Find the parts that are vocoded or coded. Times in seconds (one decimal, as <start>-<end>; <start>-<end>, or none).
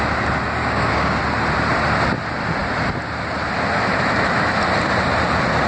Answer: 0.6-1.2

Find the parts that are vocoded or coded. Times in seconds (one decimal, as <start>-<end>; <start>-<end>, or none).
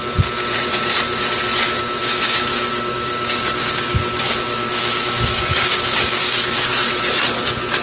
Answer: 2.0-6.7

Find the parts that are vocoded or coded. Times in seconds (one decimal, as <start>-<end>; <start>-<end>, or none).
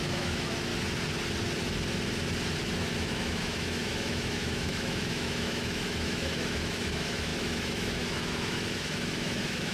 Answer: 0.0-0.7; 3.0-9.7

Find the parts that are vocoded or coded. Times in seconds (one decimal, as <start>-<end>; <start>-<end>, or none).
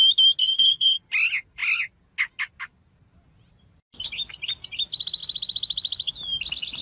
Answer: 0.4-1.0